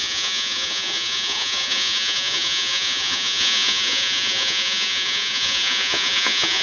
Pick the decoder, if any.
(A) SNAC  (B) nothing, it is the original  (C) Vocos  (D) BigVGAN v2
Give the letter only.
C